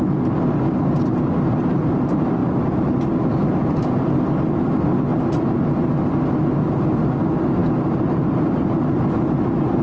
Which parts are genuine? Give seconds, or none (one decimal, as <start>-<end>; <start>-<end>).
0.0-2.4; 3.1-5.1; 5.7-7.6; 8.4-9.8